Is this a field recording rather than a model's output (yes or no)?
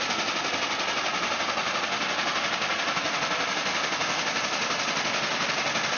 yes